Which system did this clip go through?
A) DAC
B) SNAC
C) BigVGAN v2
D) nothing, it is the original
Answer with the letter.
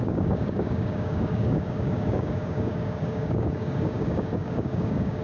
A